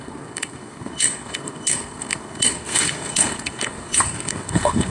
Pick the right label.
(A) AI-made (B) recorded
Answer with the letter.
A